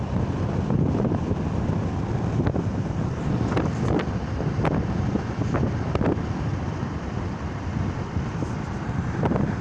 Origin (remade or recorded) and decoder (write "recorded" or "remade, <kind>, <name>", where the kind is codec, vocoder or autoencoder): remade, vocoder, BigVGAN v2